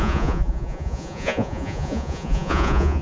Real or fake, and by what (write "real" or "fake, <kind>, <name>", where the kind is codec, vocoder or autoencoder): fake, vocoder, Vocos